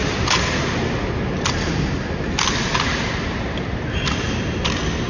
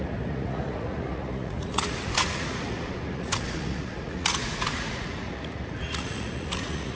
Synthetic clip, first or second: second